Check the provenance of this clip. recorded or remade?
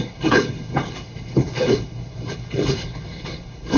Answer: remade